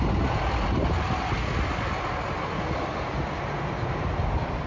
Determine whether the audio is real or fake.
real